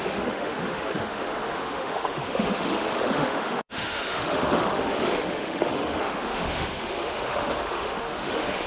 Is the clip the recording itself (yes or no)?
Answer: no